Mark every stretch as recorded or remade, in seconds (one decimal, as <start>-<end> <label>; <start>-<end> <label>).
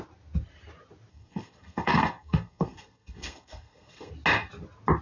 0.0-1.1 recorded; 1.1-4.1 remade; 4.1-5.0 recorded